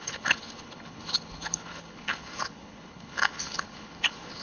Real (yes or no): no